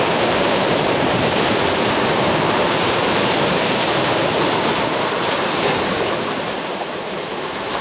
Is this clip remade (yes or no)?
yes